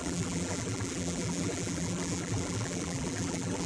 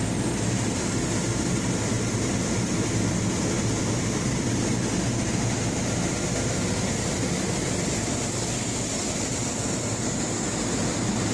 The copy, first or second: first